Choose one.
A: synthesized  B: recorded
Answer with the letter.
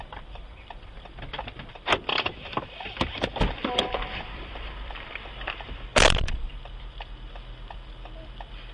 A